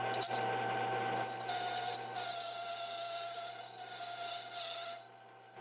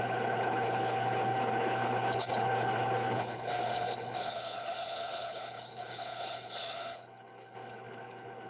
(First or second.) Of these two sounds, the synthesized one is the second